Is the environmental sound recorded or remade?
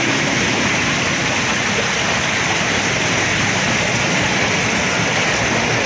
recorded